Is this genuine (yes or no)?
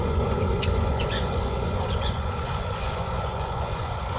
no